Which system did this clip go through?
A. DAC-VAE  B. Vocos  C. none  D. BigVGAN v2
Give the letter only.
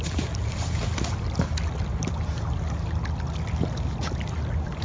C